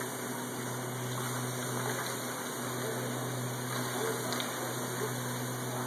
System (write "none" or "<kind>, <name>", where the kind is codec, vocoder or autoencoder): none